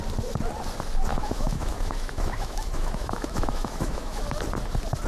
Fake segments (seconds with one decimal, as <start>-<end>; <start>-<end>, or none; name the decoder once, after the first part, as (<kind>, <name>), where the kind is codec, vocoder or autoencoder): 1.1-4.2 (autoencoder, DAC-VAE)